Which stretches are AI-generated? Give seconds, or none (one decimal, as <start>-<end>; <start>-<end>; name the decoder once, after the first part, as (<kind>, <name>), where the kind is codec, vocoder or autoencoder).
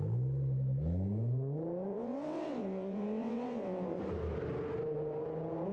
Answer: 1.9-4.0 (vocoder, WaveNeXt)